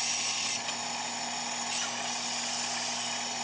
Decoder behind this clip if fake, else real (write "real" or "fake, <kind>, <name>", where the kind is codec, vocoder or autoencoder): real